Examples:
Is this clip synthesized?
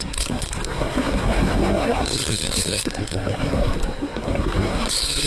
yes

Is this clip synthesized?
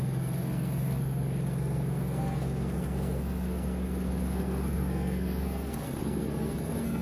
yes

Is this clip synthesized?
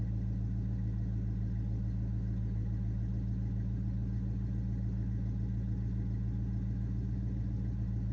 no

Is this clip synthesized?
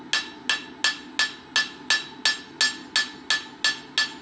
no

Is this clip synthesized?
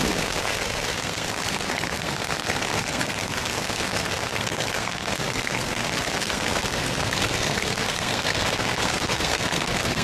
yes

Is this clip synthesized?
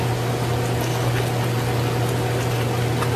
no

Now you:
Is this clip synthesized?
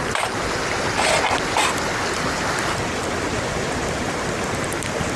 no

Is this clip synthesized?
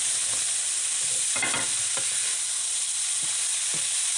no